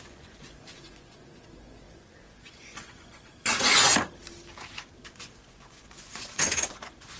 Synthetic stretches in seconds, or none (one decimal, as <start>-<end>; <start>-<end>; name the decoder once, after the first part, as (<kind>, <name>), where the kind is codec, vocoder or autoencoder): 0.0-3.9 (vocoder, Vocos); 5.1-7.2